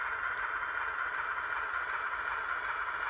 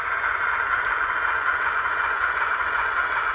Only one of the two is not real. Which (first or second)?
second